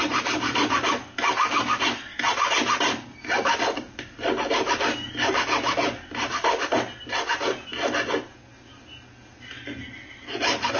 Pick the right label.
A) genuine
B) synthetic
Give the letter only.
A